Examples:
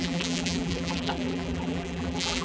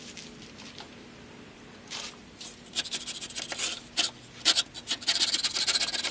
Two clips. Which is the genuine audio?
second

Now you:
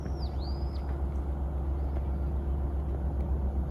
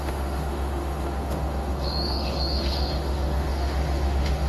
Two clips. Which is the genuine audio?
first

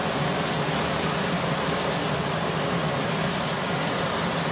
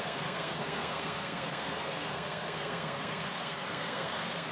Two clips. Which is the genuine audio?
first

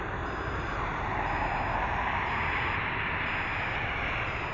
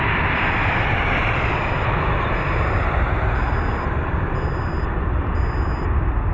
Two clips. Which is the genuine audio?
first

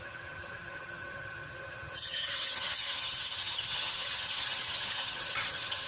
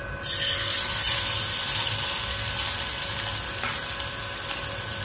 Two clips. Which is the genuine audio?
second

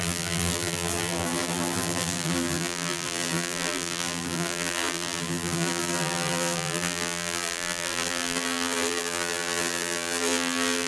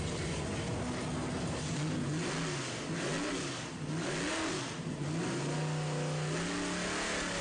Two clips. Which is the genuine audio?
second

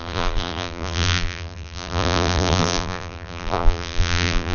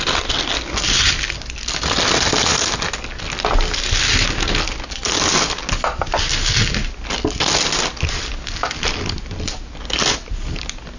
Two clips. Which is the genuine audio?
second